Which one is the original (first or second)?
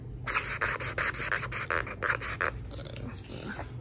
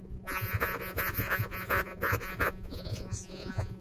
first